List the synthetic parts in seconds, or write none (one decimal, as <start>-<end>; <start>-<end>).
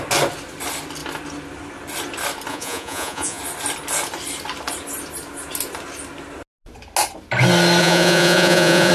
2.5-3.4; 7.8-8.9